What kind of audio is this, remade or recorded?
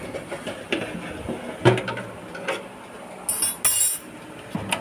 recorded